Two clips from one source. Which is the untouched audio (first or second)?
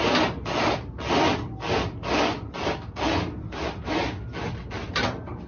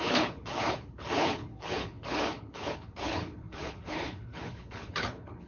first